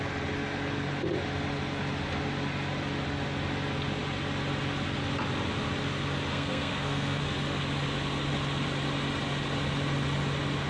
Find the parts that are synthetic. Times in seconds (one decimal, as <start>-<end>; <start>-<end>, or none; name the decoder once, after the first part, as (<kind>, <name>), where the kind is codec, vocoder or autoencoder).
6.3-7.2 (codec, SNAC)

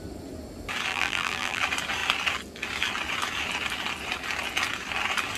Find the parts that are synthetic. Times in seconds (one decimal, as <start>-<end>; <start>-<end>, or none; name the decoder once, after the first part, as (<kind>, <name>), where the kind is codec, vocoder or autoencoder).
0.9-1.6 (vocoder, BigVGAN v2)

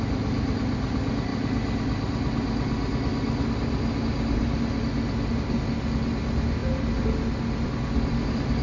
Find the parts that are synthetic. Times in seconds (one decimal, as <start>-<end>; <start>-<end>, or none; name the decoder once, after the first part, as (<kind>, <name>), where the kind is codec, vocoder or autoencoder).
none

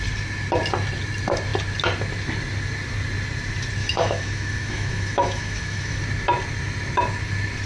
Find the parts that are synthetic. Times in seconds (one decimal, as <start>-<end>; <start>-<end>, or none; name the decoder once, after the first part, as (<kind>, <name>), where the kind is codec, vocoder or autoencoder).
3.8-6.0 (autoencoder, DAC-VAE)

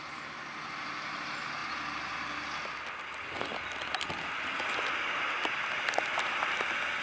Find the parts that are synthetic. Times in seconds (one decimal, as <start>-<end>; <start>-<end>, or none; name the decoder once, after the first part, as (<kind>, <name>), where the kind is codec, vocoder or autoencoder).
none

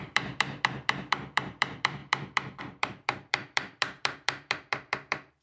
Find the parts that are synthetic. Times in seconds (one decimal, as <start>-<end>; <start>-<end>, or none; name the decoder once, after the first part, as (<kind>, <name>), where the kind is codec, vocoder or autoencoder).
0.0-5.4 (vocoder, BigVGAN v2)

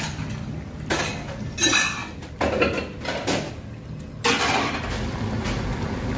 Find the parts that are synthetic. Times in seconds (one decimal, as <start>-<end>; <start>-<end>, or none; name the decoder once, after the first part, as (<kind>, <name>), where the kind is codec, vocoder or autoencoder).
none